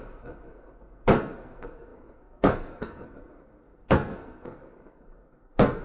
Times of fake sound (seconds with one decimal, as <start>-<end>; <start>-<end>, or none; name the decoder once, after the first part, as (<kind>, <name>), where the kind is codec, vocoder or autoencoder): 0.0-5.8 (codec, SNAC)